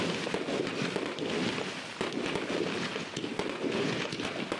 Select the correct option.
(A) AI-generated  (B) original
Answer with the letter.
B